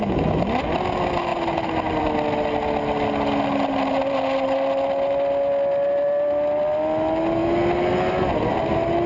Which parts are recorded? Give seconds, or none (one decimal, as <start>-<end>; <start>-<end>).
0.0-9.1